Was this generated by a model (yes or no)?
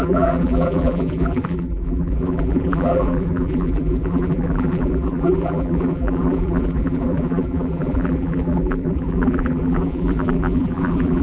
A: yes